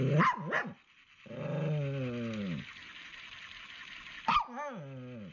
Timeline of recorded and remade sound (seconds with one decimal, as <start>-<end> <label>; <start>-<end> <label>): 0.0-5.3 recorded